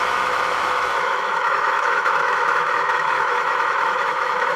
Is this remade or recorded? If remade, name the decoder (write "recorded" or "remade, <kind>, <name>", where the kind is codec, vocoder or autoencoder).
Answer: remade, autoencoder, DAC-VAE